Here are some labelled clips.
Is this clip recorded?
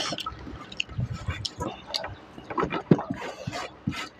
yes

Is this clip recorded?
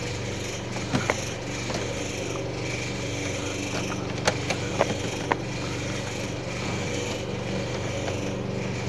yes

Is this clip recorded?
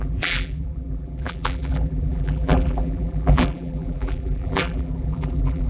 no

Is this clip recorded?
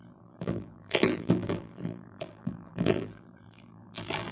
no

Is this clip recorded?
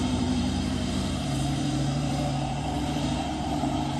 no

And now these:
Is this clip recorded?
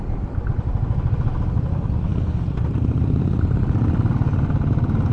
no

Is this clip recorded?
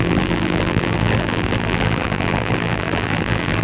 no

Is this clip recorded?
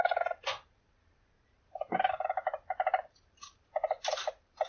no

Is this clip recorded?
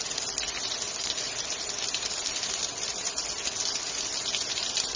no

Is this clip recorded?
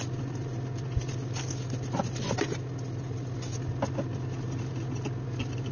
yes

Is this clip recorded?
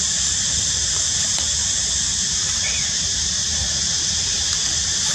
no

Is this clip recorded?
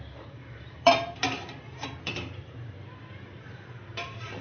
no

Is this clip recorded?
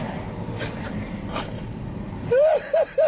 no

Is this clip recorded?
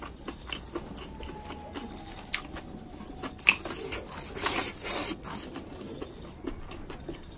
yes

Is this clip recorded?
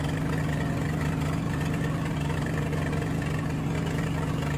yes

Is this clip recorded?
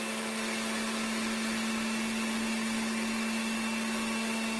yes